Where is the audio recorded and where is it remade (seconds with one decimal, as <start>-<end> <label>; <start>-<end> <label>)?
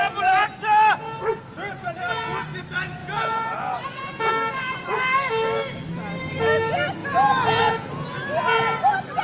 0.0-3.0 recorded; 3.0-4.3 remade; 4.3-7.0 recorded; 7.0-7.7 remade; 7.7-9.2 recorded